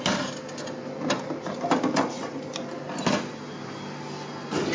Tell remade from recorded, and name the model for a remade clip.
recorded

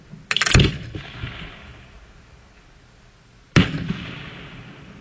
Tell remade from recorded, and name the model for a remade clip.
recorded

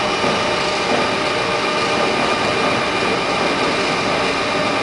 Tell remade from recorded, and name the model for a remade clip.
recorded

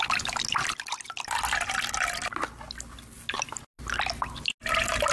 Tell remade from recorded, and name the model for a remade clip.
recorded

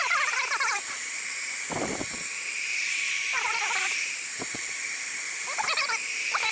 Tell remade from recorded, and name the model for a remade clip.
remade, vocoder, BigVGAN v2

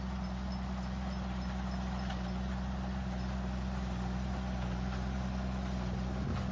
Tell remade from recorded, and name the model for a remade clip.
recorded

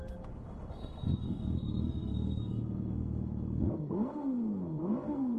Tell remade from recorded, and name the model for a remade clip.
remade, codec, SNAC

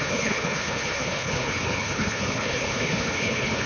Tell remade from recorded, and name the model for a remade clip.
remade, codec, HILCodec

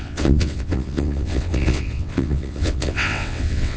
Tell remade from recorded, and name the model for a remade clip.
remade, vocoder, WaveNeXt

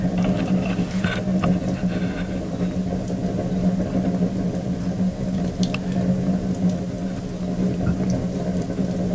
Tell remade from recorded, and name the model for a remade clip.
recorded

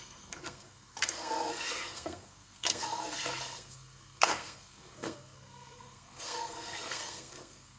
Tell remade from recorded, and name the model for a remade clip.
remade, codec, SNAC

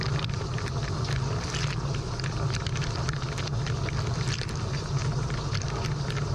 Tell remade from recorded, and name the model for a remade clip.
recorded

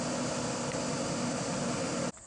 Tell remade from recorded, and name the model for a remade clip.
recorded